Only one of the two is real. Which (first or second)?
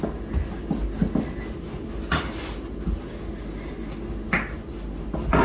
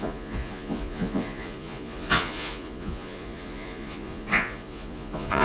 first